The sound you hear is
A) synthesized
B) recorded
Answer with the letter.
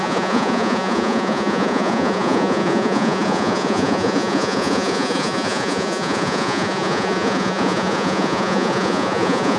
A